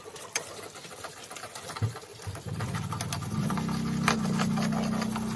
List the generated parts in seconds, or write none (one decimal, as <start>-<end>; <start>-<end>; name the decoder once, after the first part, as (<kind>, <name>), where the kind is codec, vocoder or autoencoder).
none